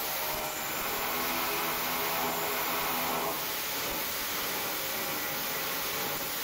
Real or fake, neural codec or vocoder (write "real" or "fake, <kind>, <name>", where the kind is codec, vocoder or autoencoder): real